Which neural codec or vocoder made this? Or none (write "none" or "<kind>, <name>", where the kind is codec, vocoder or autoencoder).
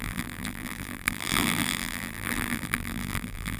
vocoder, BigVGAN v2